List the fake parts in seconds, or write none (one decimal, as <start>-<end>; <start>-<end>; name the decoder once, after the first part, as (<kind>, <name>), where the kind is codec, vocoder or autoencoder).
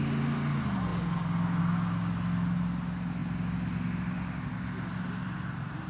none